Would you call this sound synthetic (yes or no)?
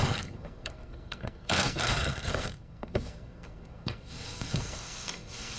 yes